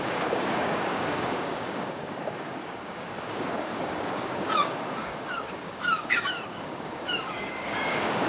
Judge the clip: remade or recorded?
remade